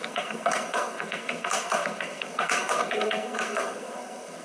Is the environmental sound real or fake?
fake